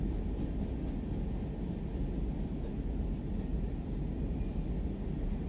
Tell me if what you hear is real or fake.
real